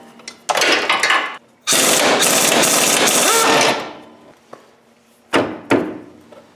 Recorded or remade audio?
recorded